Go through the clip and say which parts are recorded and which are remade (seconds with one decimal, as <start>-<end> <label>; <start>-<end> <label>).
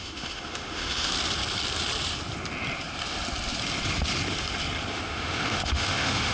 0.0-1.1 remade; 1.1-4.9 recorded; 4.9-6.3 remade